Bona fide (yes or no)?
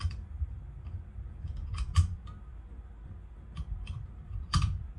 no